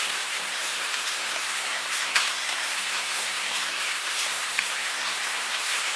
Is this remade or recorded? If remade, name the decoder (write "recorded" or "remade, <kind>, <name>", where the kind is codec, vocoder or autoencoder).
remade, codec, SNAC